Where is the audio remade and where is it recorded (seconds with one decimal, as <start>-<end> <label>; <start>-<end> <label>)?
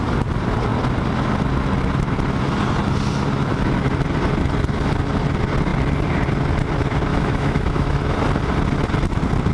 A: 0.0-7.1 recorded; 7.1-8.2 remade; 8.2-9.5 recorded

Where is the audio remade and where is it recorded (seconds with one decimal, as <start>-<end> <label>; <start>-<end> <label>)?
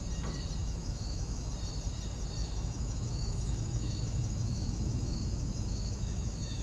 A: 0.0-0.6 recorded; 0.6-1.5 remade; 1.5-2.4 recorded; 2.4-6.6 remade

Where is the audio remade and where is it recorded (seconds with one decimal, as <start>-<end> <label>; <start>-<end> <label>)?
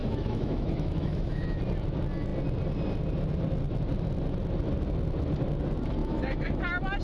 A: 0.0-1.6 remade; 1.6-6.0 recorded; 6.0-6.6 remade; 6.6-7.0 recorded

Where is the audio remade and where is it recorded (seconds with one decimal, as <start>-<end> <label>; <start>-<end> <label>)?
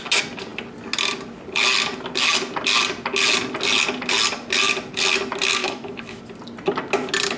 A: 0.0-5.6 recorded; 5.6-6.2 remade; 6.2-7.4 recorded